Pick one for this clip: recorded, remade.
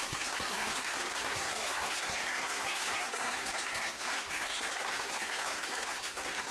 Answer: remade